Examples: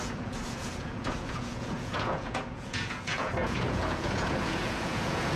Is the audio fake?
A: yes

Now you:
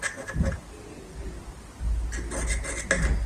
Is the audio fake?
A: no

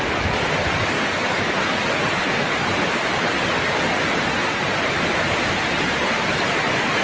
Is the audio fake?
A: no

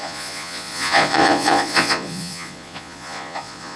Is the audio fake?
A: yes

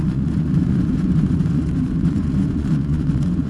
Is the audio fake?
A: yes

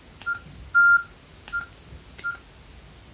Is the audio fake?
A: no